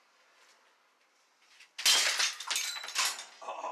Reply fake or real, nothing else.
real